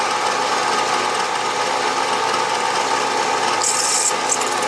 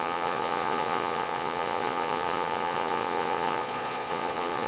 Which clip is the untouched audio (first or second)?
first